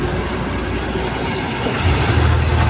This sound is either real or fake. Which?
real